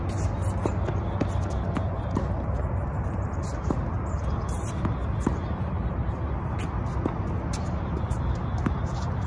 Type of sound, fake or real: real